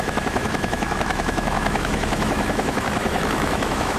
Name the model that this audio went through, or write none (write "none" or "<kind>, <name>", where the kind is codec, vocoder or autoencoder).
autoencoder, DAC-VAE